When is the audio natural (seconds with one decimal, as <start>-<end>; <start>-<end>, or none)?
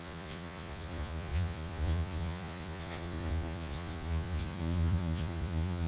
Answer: none